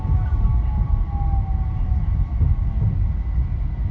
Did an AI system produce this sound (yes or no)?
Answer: no